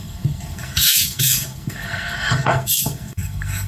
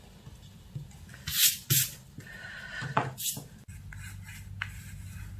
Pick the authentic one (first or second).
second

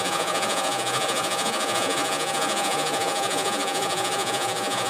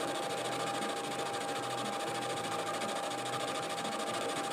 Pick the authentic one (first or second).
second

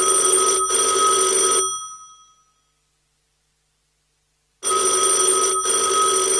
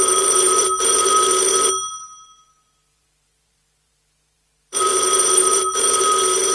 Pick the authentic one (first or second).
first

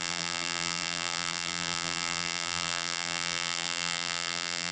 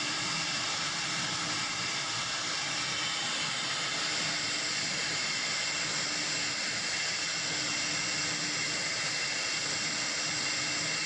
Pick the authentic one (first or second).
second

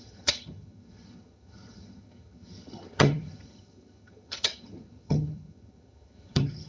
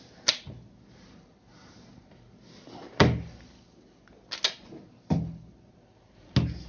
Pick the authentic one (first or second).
second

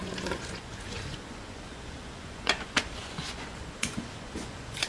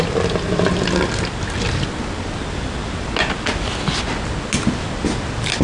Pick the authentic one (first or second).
second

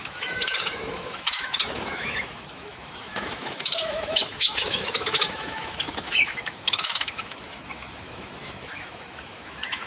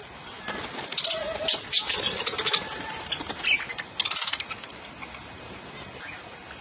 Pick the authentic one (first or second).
second